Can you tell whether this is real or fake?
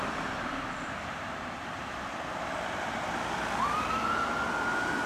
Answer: fake